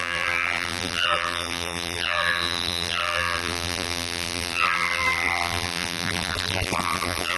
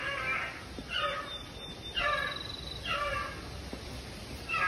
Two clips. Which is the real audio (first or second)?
second